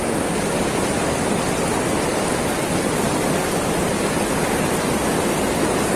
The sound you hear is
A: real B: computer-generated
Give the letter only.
A